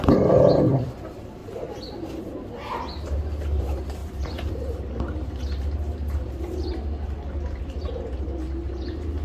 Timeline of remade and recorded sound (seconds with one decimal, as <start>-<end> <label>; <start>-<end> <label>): 0.0-9.2 recorded